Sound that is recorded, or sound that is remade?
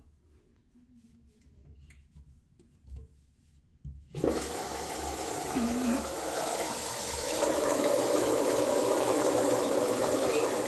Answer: remade